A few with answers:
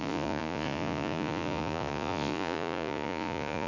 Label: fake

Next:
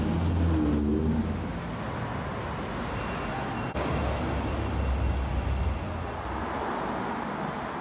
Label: real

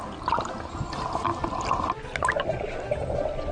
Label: real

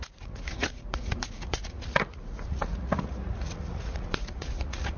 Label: fake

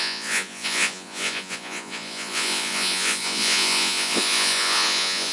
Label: fake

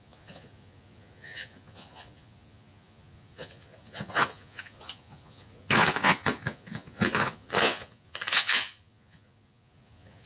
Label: fake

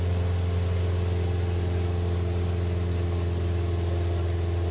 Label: real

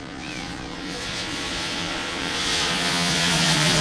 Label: fake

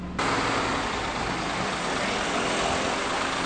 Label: real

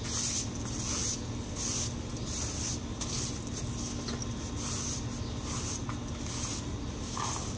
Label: real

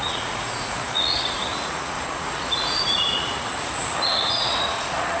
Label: fake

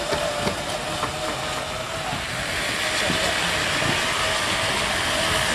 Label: real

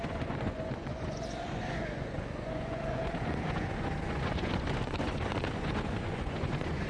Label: fake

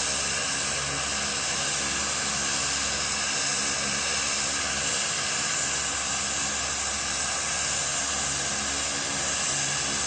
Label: real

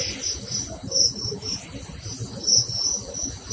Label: real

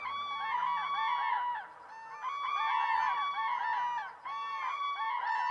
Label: real